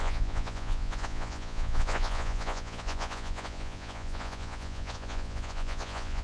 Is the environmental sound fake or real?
fake